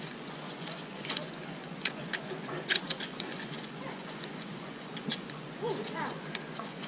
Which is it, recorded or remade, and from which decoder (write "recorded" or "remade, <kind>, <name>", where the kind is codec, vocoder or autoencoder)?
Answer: remade, vocoder, Vocos